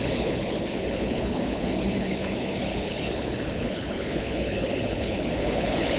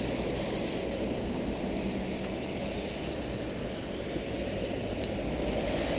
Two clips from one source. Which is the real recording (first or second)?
second